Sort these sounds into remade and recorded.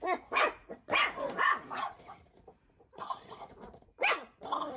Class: remade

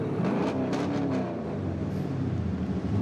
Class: recorded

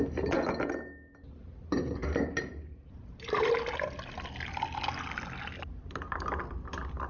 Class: recorded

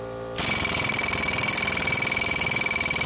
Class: recorded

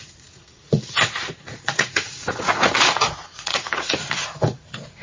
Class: remade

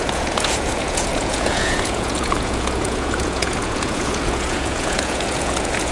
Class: remade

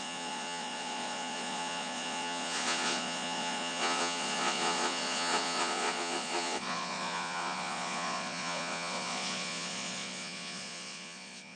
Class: remade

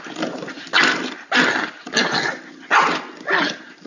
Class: recorded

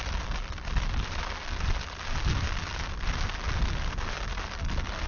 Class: recorded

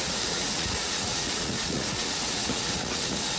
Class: remade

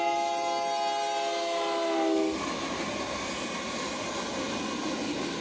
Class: recorded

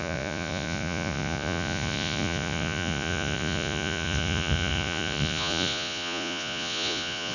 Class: remade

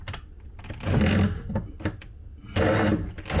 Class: recorded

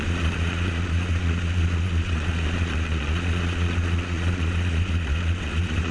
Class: remade